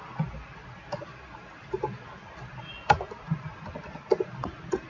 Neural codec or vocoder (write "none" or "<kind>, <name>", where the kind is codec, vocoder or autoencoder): none